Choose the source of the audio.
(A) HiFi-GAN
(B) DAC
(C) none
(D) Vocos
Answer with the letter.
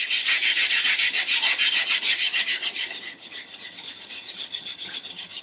A